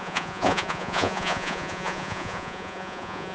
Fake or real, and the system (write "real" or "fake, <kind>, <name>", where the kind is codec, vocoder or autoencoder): fake, vocoder, Vocos